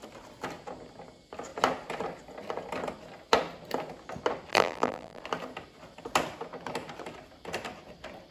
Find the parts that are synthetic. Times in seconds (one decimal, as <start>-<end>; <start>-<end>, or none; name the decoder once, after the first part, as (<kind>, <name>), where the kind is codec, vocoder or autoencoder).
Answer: 4.5-5.2 (vocoder, BigVGAN v2)